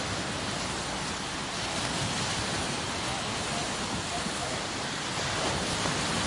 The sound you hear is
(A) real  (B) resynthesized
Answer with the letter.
A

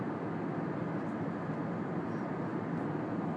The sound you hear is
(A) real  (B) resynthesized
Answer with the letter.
A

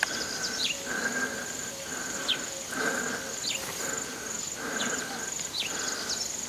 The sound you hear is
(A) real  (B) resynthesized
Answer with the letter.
A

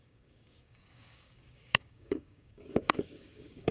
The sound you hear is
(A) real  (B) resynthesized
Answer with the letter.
B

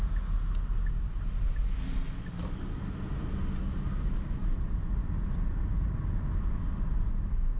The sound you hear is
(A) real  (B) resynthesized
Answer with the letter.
A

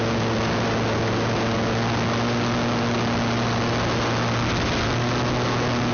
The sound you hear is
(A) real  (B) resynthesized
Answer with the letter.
A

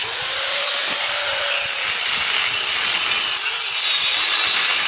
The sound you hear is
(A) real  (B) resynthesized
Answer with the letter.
A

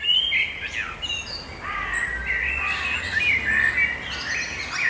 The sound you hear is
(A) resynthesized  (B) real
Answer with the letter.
B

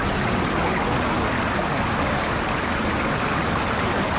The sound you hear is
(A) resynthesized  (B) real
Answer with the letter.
B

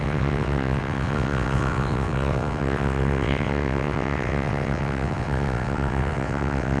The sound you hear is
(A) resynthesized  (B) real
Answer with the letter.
A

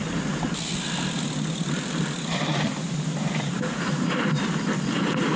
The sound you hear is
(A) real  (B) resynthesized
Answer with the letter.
B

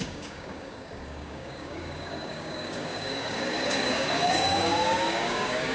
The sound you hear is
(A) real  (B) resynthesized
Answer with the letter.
B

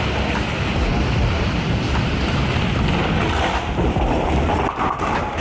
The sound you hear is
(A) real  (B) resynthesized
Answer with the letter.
B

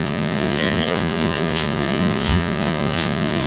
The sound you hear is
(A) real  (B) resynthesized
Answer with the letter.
B